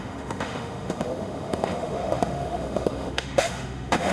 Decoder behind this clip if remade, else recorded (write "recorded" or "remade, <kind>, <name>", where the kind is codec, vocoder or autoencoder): remade, autoencoder, DAC-VAE